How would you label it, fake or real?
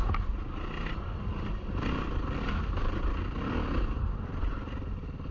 real